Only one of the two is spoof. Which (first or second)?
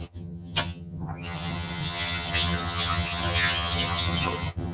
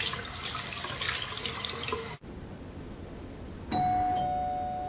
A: first